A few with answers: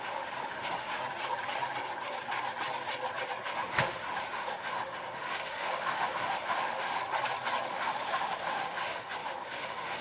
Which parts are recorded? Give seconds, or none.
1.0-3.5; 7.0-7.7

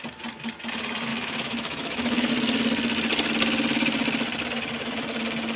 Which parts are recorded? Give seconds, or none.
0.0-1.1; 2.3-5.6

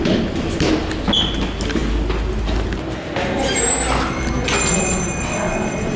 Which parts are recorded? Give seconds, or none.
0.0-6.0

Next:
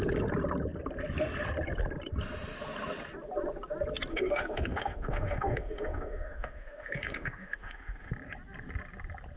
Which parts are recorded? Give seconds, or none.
0.0-4.1; 8.1-9.4

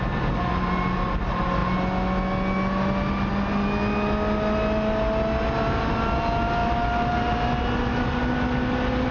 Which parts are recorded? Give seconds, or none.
0.0-9.1